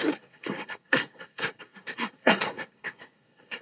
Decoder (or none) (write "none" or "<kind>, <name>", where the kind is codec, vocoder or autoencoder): codec, SNAC